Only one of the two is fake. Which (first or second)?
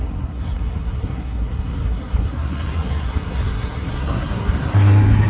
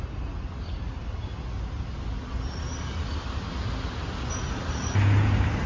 first